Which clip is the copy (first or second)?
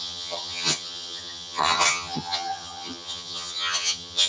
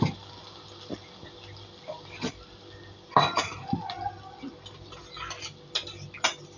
first